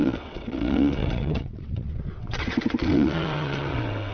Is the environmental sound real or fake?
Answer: fake